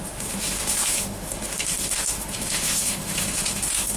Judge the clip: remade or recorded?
remade